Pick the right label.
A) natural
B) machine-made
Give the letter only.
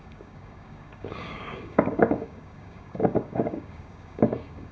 B